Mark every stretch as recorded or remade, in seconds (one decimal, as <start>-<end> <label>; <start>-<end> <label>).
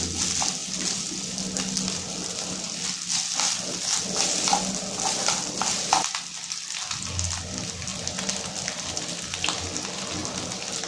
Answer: 0.0-10.9 recorded